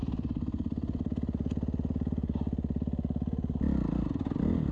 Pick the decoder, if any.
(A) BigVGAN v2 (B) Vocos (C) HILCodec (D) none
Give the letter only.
D